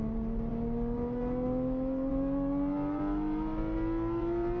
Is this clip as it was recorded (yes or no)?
yes